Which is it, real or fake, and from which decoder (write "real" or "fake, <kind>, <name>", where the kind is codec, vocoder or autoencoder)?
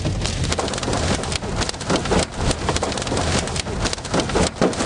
real